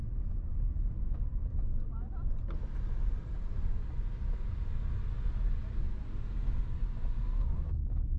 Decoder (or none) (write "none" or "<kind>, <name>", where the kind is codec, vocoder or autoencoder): none